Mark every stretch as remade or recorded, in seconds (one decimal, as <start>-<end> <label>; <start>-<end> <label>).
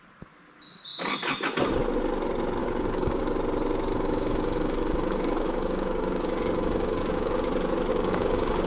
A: 0.0-2.6 recorded; 2.6-3.2 remade; 3.2-3.9 recorded; 3.9-7.4 remade; 7.4-7.9 recorded; 7.9-8.7 remade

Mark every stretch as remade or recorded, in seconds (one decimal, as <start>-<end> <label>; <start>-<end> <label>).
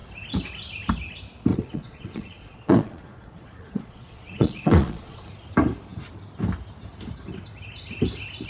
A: 0.0-1.5 recorded; 1.5-5.3 remade; 5.3-8.5 recorded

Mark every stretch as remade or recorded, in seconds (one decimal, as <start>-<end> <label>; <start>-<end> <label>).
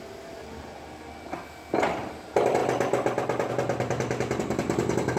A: 0.0-5.2 recorded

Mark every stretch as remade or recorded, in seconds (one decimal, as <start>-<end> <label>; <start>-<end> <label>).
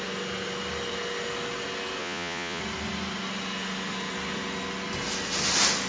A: 0.0-2.0 recorded; 2.0-2.6 remade; 2.6-5.9 recorded